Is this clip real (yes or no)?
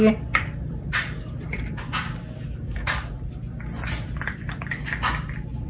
no